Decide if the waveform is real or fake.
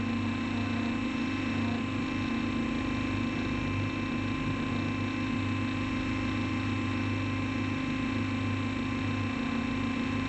real